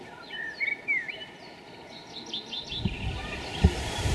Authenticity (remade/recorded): recorded